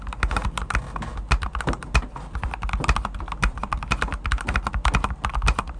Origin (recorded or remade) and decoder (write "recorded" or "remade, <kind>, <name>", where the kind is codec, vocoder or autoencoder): recorded